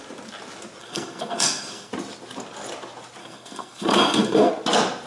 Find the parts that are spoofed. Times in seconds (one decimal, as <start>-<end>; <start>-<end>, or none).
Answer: 0.8-1.9; 3.2-4.5